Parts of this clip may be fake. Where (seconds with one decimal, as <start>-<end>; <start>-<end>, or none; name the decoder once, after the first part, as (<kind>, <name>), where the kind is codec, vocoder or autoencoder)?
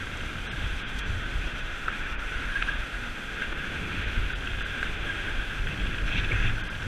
0.6-4.3 (autoencoder, DAC-VAE); 4.7-5.6